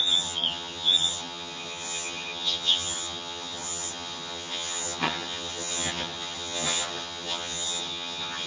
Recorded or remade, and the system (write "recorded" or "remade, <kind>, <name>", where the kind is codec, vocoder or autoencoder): remade, vocoder, HiFi-GAN